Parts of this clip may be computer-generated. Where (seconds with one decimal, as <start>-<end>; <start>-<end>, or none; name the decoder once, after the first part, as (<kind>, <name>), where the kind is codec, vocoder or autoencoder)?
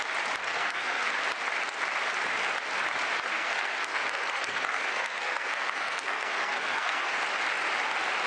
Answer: 0.4-1.2 (codec, SNAC); 3.3-7.2